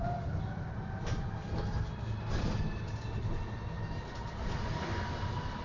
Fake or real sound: real